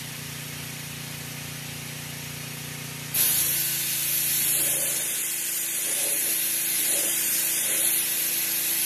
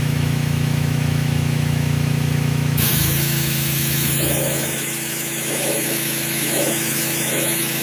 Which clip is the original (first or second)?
first